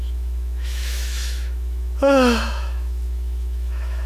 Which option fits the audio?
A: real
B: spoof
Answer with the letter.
B